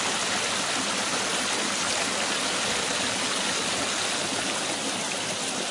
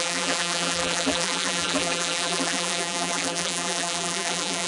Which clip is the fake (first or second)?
second